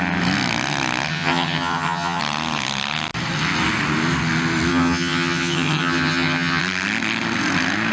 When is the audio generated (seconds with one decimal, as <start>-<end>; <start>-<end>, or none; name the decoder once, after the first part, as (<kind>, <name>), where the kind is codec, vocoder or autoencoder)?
1.1-2.2 (vocoder, HiFi-GAN); 4.7-6.6